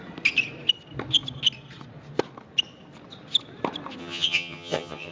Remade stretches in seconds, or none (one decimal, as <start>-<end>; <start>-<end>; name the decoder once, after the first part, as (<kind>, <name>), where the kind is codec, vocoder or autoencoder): 4.0-5.1 (vocoder, HiFi-GAN)